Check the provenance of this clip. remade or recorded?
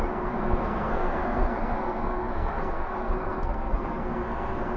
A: remade